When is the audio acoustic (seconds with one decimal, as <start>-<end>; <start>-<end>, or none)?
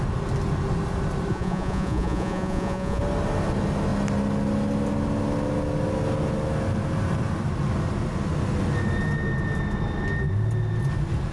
0.0-1.3; 3.0-11.3